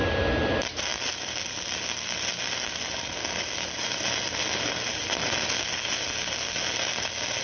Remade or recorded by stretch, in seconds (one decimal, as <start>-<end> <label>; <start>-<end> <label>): 0.0-7.4 recorded